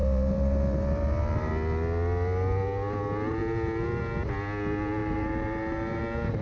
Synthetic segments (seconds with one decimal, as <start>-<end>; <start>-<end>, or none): 0.0-1.5; 5.0-6.0